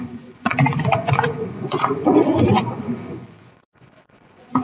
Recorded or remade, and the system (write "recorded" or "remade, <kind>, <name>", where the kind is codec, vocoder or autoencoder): remade, vocoder, Vocos